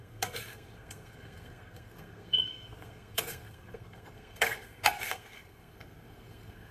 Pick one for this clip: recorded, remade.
remade